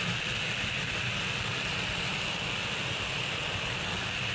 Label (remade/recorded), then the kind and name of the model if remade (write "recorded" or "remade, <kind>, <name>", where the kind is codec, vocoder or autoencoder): recorded